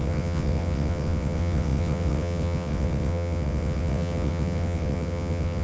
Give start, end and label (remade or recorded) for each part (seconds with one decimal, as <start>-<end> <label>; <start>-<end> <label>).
0.0-5.6 remade